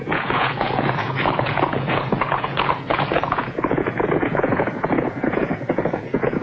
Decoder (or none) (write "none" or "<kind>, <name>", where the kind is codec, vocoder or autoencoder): vocoder, Vocos